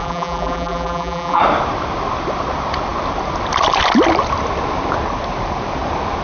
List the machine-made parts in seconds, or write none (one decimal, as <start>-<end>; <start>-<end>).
0.0-1.4